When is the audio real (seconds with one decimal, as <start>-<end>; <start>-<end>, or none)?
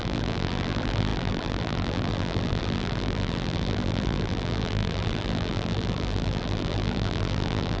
none